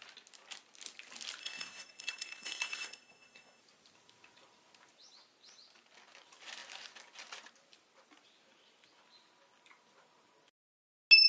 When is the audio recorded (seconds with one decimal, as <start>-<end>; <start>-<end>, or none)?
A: 0.0-1.4; 3.6-11.3